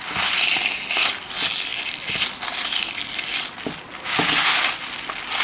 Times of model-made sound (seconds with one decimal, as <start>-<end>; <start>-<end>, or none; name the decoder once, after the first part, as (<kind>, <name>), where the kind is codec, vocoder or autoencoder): none